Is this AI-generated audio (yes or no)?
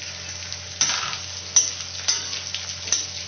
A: no